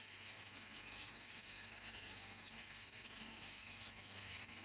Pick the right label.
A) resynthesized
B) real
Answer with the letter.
A